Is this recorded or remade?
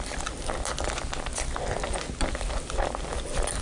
recorded